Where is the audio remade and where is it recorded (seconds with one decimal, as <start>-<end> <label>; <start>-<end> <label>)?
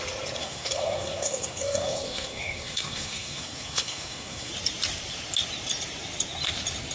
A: 0.0-0.4 recorded; 0.4-4.5 remade; 4.5-6.9 recorded